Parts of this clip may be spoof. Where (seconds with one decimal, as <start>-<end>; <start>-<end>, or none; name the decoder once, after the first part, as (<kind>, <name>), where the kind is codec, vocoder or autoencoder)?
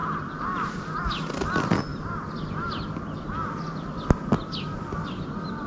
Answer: 0.0-1.0 (vocoder, BigVGAN v2)